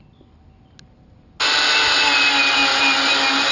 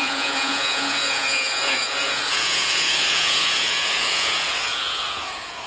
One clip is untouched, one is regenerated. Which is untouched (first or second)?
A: first